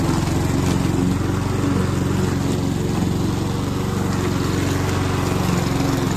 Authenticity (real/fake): real